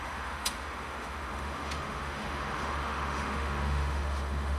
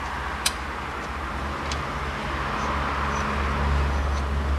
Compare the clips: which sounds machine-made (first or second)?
first